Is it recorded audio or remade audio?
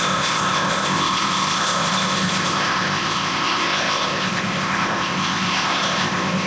remade